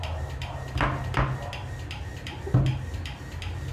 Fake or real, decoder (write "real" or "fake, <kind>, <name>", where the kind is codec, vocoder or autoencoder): real